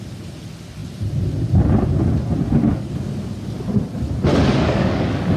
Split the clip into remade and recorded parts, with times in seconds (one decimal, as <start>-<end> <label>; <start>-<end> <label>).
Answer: 0.0-2.7 recorded; 2.7-3.3 remade; 3.3-4.3 recorded; 4.3-5.4 remade